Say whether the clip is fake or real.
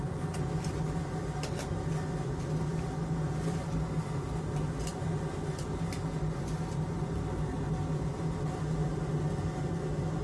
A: real